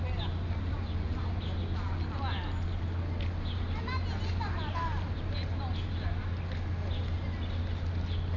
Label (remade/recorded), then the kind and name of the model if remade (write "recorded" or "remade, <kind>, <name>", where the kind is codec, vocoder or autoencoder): recorded